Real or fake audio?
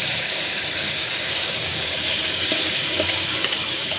fake